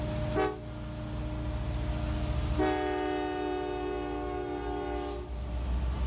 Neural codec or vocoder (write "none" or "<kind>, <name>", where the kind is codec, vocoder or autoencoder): none